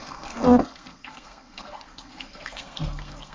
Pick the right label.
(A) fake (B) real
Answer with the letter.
A